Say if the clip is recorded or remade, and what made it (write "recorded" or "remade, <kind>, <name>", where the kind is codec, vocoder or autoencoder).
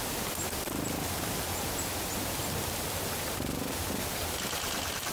recorded